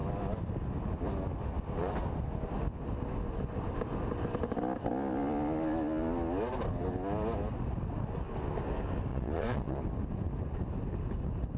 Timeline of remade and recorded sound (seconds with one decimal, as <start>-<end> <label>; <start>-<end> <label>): 0.0-9.1 recorded; 9.1-9.8 remade; 9.8-11.6 recorded